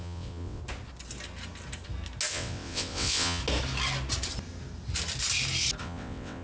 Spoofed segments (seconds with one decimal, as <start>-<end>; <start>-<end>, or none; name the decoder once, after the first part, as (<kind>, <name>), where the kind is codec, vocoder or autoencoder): 0.0-0.6 (vocoder, WaveNeXt); 2.3-3.4; 5.8-6.4